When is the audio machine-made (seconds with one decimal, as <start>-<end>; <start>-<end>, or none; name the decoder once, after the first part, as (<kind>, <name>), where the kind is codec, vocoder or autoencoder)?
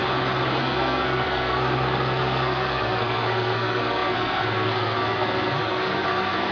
0.6-6.5 (codec, SNAC)